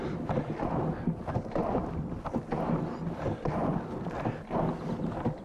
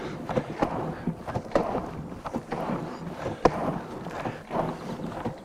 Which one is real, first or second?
first